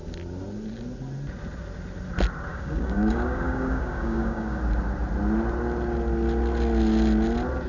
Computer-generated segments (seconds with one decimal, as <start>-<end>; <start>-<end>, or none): 2.5-4.6